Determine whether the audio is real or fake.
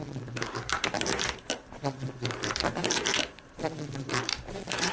fake